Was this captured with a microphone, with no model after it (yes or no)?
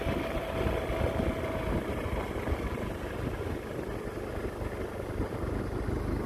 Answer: yes